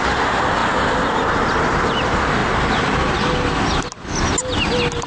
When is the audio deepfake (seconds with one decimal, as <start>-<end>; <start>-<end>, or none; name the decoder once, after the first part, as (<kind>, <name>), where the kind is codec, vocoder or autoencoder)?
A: none